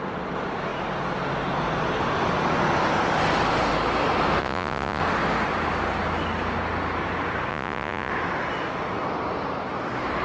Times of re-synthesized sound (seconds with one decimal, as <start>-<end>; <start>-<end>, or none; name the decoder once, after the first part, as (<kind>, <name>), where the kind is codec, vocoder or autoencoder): 4.4-5.0 (vocoder, Vocos); 7.5-8.1